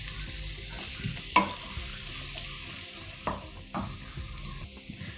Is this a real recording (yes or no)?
yes